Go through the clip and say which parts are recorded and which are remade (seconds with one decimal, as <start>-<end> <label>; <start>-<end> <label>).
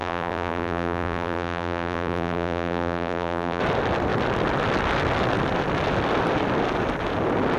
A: 0.0-3.6 remade; 3.6-7.6 recorded